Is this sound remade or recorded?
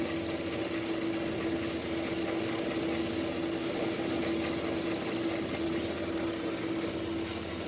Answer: recorded